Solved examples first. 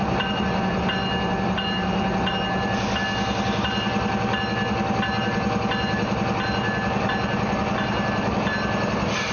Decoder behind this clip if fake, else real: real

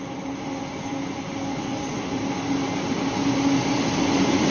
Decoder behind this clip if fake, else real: real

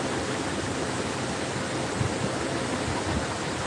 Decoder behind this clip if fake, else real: real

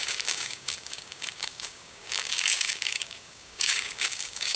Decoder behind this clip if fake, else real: fake, codec, DAC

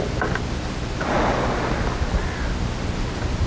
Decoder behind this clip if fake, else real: real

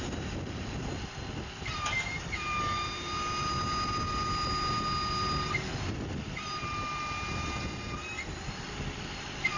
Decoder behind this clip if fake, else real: real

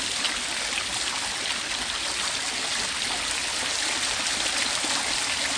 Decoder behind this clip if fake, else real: real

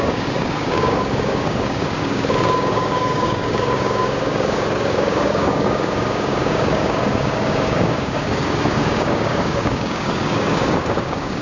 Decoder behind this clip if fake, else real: fake, codec, DAC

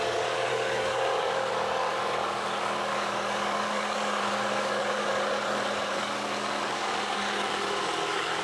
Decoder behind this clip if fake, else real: fake, codec, DAC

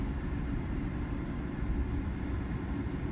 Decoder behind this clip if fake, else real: real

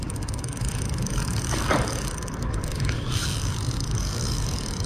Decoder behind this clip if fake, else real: fake, codec, DAC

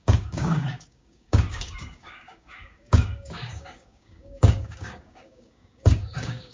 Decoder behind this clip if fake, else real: fake, codec, DAC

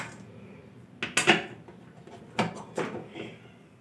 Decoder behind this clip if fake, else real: real